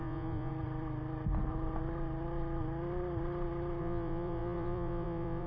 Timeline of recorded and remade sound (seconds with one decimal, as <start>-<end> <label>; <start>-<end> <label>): 0.0-0.5 remade; 0.5-3.8 recorded; 3.8-5.5 remade